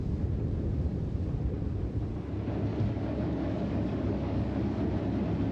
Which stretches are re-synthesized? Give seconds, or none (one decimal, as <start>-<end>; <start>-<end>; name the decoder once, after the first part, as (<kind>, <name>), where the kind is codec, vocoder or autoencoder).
2.7-4.8 (codec, DAC)